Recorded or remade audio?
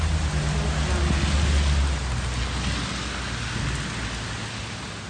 recorded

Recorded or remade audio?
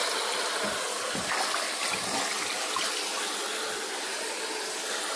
recorded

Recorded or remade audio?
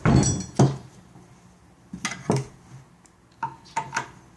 recorded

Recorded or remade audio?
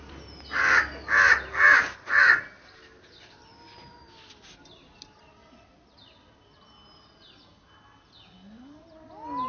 recorded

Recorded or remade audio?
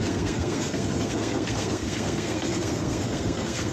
remade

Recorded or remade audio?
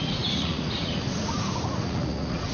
remade